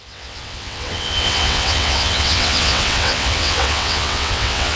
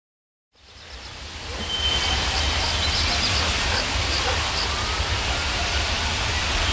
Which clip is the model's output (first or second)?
first